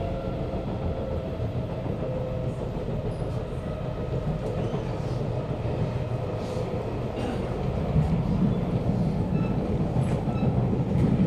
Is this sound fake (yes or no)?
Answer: no